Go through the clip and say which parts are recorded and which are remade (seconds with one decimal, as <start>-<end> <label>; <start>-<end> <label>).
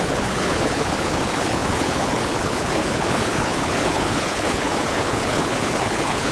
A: 0.0-6.3 remade